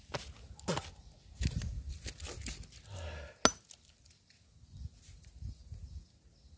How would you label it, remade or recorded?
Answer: recorded